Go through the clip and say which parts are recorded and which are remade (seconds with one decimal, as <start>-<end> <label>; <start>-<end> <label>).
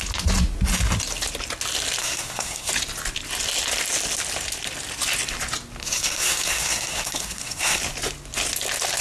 0.0-2.0 recorded; 2.0-2.7 remade; 2.7-5.8 recorded; 5.8-7.8 remade; 7.8-9.0 recorded